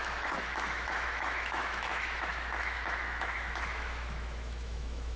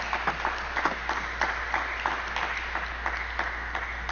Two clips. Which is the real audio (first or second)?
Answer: second